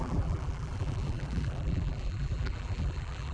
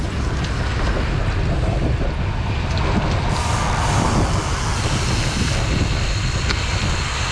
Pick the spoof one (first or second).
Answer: first